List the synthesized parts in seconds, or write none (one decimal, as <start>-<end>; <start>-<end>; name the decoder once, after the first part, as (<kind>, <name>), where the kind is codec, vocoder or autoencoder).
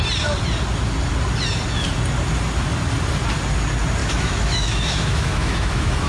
4.0-6.1 (autoencoder, DAC-VAE)